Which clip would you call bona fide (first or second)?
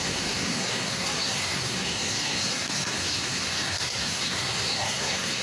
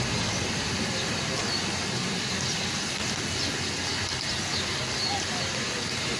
second